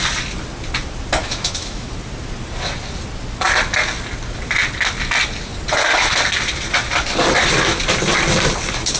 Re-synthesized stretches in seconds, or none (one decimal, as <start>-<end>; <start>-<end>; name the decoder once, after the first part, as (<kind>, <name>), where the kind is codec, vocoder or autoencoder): 1.2-1.9 (autoencoder, DAC-VAE)